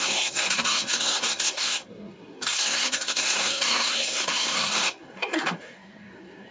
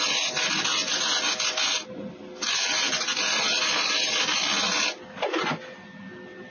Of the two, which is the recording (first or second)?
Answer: second